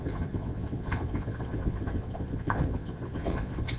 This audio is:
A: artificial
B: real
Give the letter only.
A